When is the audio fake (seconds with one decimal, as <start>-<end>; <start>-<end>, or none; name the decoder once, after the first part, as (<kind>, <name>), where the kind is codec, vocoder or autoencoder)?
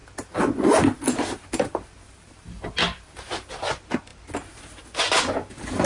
none